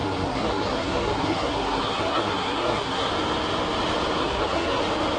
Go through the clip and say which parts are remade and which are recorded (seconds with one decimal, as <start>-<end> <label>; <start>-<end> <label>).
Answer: 0.0-3.1 remade; 3.1-4.2 recorded; 4.2-4.8 remade; 4.8-5.2 recorded